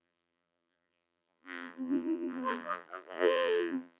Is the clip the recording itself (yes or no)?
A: no